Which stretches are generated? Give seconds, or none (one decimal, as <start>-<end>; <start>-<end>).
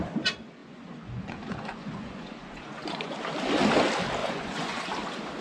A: 0.6-3.1; 4.2-4.8